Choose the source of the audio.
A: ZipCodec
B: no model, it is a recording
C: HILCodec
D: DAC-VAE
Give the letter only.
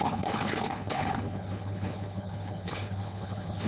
C